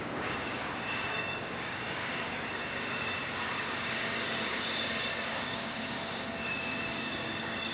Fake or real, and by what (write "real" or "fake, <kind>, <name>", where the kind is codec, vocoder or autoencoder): fake, codec, DAC